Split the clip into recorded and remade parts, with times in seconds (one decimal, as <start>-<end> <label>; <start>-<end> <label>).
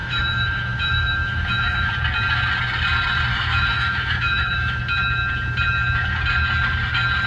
0.0-1.9 remade; 1.9-3.3 recorded; 3.3-4.8 remade; 4.8-7.3 recorded